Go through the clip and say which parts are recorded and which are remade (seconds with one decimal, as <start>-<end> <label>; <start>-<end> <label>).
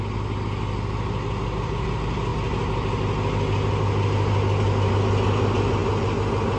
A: 0.0-6.6 recorded